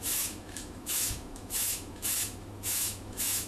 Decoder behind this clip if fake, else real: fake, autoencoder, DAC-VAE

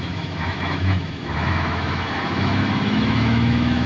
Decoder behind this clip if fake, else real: fake, autoencoder, DAC-VAE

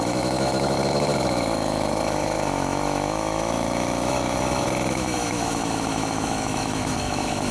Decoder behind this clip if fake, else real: fake, autoencoder, DAC-VAE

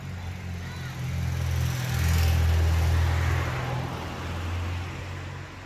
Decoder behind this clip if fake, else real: real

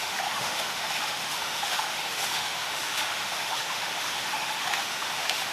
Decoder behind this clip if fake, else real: fake, autoencoder, DAC-VAE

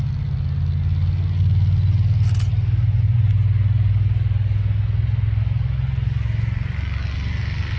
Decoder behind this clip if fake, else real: real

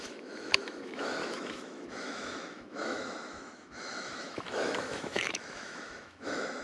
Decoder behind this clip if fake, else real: fake, autoencoder, DAC-VAE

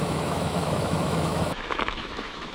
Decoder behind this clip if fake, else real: fake, autoencoder, DAC-VAE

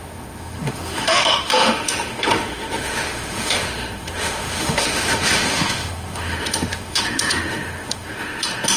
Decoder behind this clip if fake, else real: fake, autoencoder, DAC-VAE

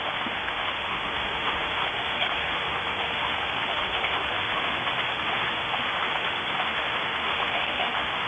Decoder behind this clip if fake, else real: fake, autoencoder, DAC-VAE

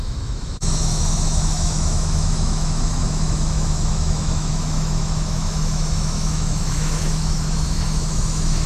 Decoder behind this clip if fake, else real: fake, autoencoder, DAC-VAE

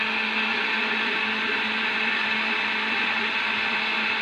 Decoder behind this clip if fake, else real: real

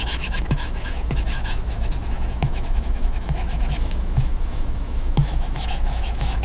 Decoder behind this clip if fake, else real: fake, autoencoder, DAC-VAE